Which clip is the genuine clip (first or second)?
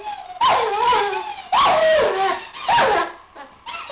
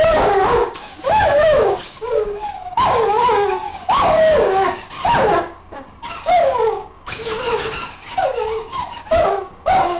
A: first